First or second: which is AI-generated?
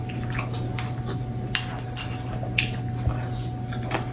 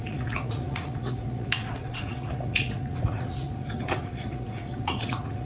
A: second